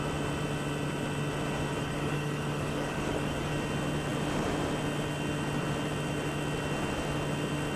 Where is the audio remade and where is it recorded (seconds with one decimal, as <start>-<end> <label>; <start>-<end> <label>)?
0.0-1.7 recorded; 1.7-3.5 remade; 3.5-7.8 recorded